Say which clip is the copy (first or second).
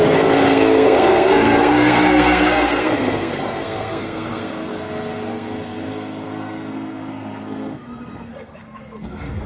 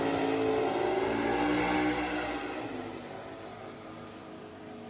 first